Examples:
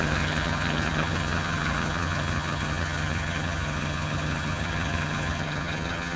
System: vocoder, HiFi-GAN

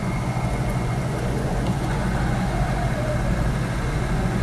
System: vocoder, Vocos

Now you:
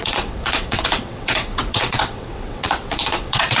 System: vocoder, WaveNeXt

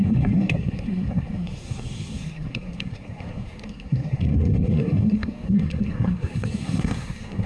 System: codec, SNAC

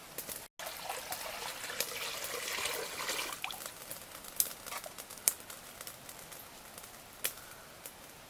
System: none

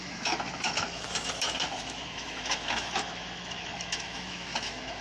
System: autoencoder, DAC-VAE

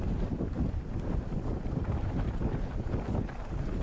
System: none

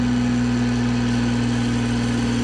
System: none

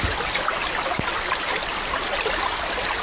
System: none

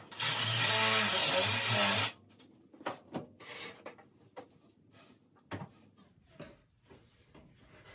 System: none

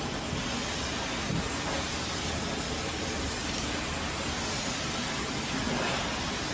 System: none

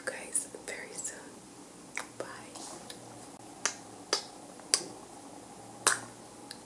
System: none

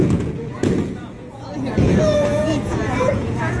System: vocoder, Vocos